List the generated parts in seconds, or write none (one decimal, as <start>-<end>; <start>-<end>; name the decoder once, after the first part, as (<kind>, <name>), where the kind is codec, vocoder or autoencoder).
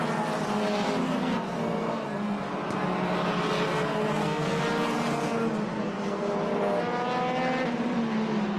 1.2-2.5 (codec, SNAC); 3.7-4.6; 5.7-6.4